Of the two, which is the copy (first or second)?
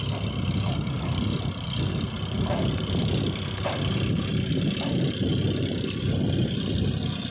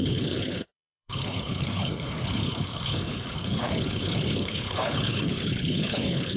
second